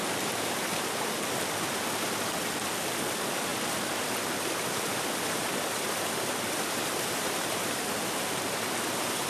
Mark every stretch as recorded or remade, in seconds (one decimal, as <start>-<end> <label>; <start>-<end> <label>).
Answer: 0.0-3.5 recorded; 3.5-7.2 remade; 7.2-9.3 recorded